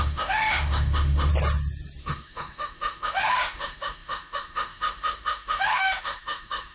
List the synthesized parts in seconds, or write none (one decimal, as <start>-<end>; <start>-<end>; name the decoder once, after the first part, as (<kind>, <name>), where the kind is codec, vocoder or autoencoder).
0.0-1.3 (autoencoder, DAC-VAE); 2.0-6.7